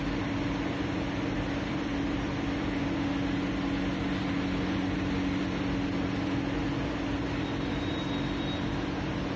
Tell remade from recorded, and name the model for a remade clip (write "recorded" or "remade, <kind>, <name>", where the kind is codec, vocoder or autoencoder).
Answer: recorded